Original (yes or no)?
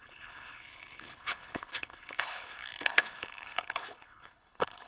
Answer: no